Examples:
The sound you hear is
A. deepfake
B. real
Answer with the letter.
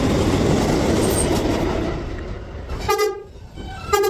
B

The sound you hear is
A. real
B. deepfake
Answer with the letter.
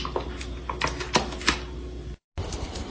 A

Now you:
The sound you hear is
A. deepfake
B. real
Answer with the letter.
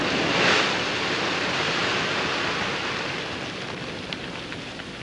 B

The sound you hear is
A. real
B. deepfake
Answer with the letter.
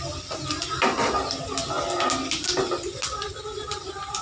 A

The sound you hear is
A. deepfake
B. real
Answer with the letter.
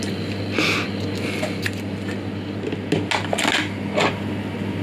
B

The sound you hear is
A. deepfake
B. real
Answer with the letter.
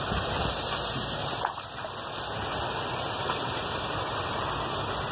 B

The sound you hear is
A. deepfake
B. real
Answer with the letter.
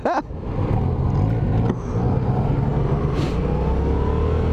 B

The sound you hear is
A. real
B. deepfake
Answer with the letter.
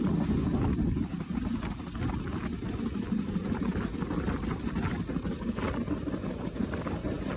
A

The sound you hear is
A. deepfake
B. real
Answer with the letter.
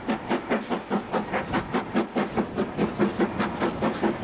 B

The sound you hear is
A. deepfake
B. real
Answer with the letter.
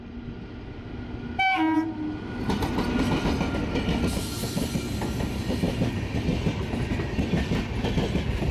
B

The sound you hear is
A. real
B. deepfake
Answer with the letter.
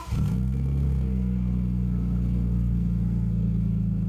B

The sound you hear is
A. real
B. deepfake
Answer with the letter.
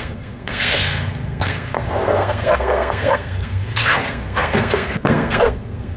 B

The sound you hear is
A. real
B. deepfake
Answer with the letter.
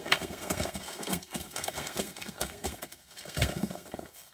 B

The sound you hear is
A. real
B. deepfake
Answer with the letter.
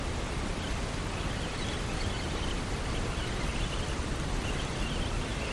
B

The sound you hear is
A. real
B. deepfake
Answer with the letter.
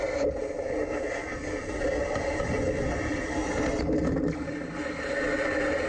A